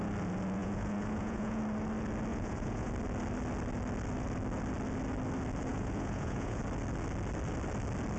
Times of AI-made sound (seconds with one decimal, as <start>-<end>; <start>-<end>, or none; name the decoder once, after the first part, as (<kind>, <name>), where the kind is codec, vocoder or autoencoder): 0.6-1.6 (vocoder, Vocos); 2.3-2.9; 5.7-6.6